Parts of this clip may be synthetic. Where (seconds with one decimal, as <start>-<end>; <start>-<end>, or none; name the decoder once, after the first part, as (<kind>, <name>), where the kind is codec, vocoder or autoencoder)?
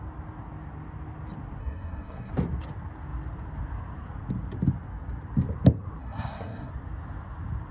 1.6-2.3 (codec, SNAC); 6.0-6.7